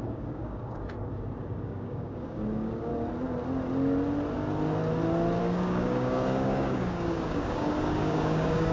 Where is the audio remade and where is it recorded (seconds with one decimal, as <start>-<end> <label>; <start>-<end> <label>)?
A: 0.0-2.9 remade; 2.9-5.4 recorded; 5.4-8.7 remade